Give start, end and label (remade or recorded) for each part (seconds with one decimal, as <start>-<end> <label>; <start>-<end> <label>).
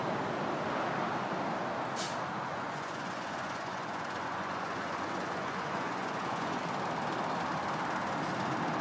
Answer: 0.0-2.5 recorded; 2.5-6.6 remade; 6.6-8.8 recorded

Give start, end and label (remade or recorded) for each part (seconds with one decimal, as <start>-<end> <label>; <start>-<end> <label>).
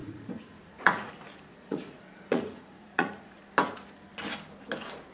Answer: 0.0-1.1 remade; 1.1-1.5 recorded; 1.5-3.4 remade; 3.4-5.1 recorded